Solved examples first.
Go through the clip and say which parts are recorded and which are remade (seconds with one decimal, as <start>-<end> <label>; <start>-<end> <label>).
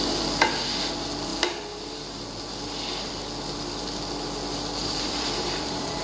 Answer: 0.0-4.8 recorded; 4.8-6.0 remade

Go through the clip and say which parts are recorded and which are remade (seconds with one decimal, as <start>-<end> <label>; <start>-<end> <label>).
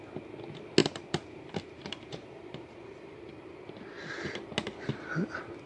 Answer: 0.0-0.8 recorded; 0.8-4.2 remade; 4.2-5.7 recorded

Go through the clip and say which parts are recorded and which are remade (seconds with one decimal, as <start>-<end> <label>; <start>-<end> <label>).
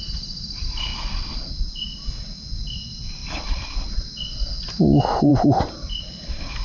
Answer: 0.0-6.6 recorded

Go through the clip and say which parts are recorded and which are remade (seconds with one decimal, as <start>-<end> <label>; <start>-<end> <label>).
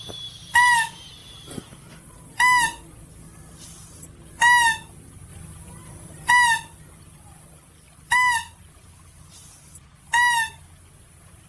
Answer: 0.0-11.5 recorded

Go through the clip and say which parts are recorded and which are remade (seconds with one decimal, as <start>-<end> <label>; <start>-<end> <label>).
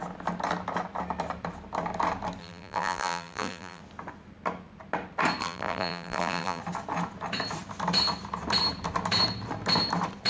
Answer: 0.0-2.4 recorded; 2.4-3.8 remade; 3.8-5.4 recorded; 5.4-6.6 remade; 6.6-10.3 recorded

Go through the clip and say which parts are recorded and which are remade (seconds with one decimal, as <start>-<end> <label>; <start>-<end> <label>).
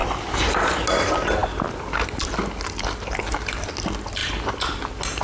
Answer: 0.0-4.2 recorded; 4.2-4.8 remade; 4.8-5.2 recorded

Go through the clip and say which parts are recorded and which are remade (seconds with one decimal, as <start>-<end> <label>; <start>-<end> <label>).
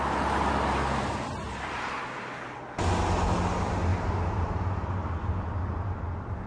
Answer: 0.0-3.9 recorded; 3.9-4.9 remade; 4.9-6.5 recorded